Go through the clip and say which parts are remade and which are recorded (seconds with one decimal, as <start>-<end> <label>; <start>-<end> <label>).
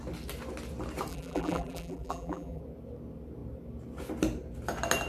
0.0-1.1 recorded; 1.1-2.6 remade; 2.6-5.1 recorded